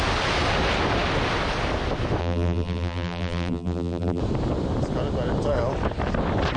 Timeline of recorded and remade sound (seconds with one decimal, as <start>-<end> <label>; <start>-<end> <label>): 0.0-2.2 recorded; 2.2-4.2 remade; 4.2-6.6 recorded